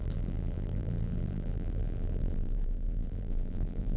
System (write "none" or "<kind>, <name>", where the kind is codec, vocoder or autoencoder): vocoder, BigVGAN v2